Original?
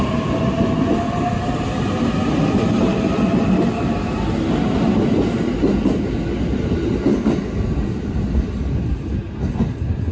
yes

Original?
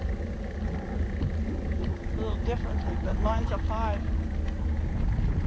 yes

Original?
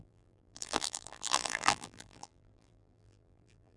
no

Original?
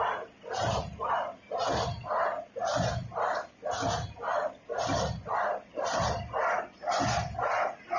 yes